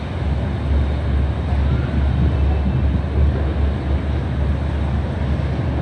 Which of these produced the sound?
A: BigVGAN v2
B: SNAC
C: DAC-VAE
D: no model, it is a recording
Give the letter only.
D